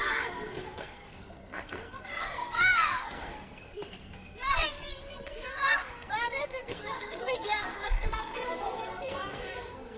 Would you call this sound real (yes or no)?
no